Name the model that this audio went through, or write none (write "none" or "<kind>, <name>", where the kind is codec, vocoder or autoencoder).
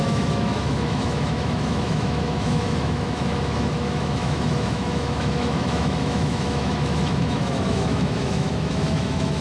autoencoder, DAC-VAE